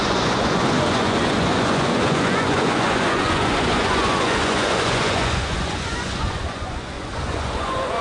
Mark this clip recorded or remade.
remade